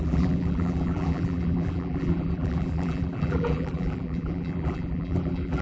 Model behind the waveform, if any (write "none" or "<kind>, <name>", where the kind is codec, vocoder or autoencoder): vocoder, BigVGAN v2